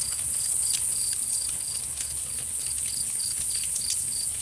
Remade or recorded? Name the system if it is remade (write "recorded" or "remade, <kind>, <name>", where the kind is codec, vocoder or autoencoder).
remade, codec, HILCodec